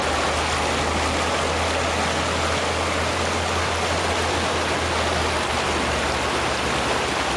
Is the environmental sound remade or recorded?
recorded